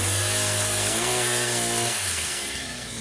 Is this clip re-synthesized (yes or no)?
yes